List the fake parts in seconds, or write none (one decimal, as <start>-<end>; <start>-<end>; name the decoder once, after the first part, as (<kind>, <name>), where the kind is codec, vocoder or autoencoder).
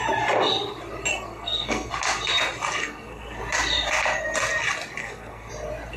1.1-1.9 (codec, SNAC); 2.8-3.4; 5.0-5.5